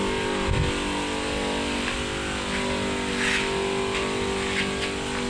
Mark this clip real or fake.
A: real